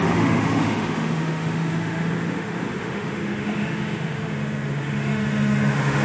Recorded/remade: remade